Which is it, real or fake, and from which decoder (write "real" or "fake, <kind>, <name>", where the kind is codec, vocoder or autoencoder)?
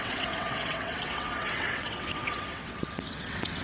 fake, vocoder, WaveNeXt